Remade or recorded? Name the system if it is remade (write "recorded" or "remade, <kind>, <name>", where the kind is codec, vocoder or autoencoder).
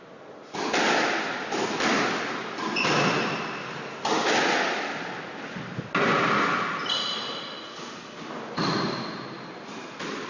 recorded